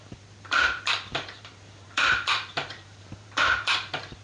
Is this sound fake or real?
fake